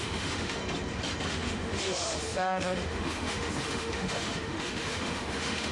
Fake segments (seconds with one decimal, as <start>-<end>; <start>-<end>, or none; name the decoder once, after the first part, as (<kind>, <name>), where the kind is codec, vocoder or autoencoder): 0.0-0.6 (autoencoder, DAC-VAE); 1.3-5.7